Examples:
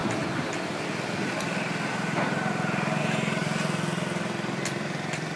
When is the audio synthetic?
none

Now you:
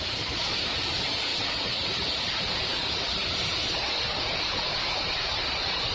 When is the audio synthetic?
none